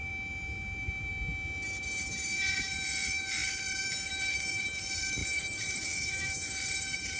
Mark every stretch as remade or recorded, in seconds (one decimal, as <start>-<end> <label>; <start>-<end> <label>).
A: 0.0-1.1 remade; 1.1-1.8 recorded; 1.8-7.2 remade